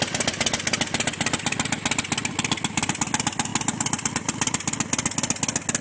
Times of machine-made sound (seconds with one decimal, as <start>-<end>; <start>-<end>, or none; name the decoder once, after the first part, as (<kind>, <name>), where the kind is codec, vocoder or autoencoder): none